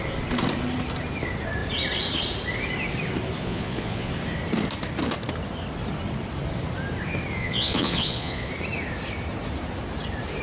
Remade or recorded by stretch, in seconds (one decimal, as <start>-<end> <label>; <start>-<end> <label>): 0.0-3.4 recorded; 3.4-4.1 remade; 4.1-7.4 recorded; 7.4-8.5 remade; 8.5-10.4 recorded